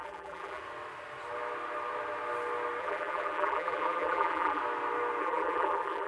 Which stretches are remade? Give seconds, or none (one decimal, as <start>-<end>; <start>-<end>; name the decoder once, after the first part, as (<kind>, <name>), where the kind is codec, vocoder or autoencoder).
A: 0.0-0.6 (vocoder, BigVGAN v2); 2.8-4.6; 5.2-6.1